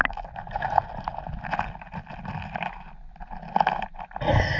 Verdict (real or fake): real